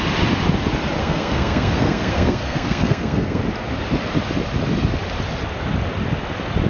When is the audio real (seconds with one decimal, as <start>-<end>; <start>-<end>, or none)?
0.0-1.0; 3.4-6.7